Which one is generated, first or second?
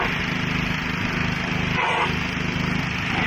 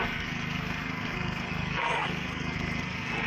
second